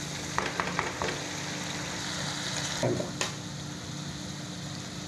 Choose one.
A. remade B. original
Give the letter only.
B